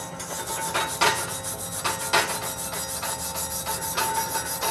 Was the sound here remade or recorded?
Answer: recorded